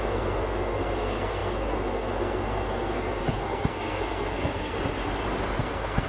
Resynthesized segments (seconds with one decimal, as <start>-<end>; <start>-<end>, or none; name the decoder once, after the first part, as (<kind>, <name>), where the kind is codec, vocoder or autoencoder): 0.0-4.8 (codec, SNAC); 5.6-6.1